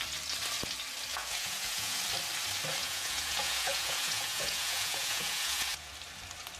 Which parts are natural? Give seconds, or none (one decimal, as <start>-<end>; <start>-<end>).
0.0-1.1; 2.0-2.8; 5.9-6.6